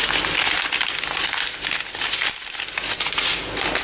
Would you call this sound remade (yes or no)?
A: no